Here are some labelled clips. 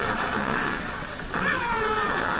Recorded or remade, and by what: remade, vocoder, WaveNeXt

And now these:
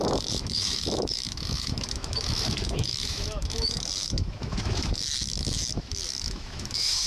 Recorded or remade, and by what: remade, autoencoder, DAC-VAE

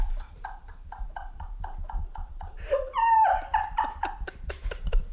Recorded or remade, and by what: remade, vocoder, BigVGAN v2